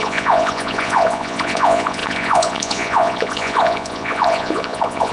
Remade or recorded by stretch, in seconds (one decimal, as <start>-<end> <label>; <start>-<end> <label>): 0.0-5.1 remade